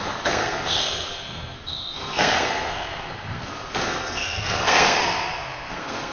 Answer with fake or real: fake